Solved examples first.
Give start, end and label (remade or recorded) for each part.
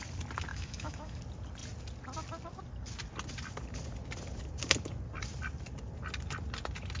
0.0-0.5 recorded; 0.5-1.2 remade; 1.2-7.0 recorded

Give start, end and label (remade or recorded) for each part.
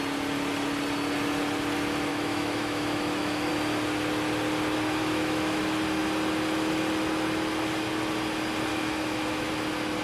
0.0-2.1 recorded; 2.1-3.5 remade; 3.5-5.0 recorded; 5.0-5.6 remade; 5.6-8.7 recorded; 8.7-9.5 remade; 9.5-10.0 recorded